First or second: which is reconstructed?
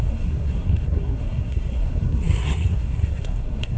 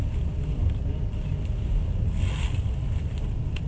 first